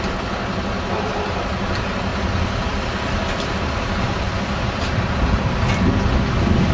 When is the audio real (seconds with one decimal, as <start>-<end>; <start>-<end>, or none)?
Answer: 0.0-2.1; 5.9-6.7